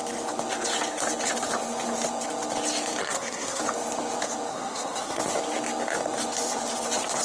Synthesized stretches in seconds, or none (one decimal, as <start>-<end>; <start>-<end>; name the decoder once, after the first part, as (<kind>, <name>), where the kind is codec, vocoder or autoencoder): 3.0-3.6 (codec, SNAC); 4.5-5.2